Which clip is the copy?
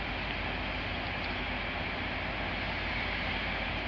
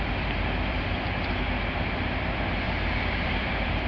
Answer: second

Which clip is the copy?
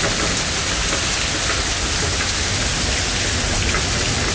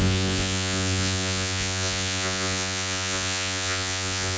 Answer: second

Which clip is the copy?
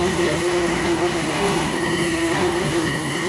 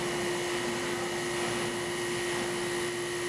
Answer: first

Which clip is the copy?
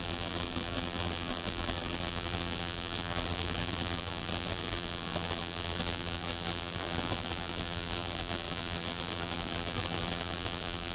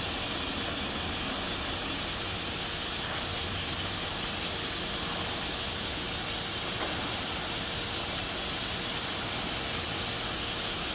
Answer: first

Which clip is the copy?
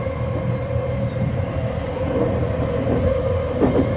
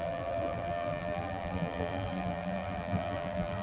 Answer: second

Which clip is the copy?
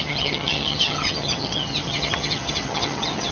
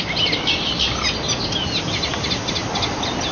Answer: first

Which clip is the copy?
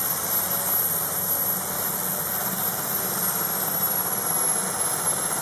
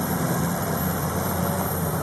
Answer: second